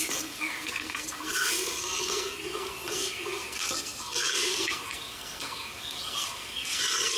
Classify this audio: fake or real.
fake